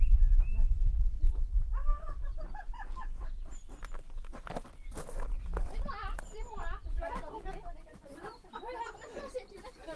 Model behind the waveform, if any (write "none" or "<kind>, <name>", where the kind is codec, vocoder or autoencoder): vocoder, BigVGAN v2